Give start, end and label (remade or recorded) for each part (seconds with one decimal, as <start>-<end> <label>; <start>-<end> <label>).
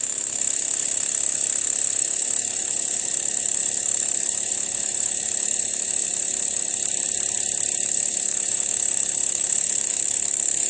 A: 0.0-6.8 remade; 6.8-7.9 recorded; 7.9-10.7 remade